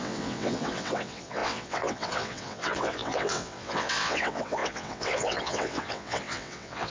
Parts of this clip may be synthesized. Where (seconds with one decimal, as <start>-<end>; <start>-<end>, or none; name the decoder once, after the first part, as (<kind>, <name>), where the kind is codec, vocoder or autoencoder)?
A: 0.0-6.9 (vocoder, WaveNeXt)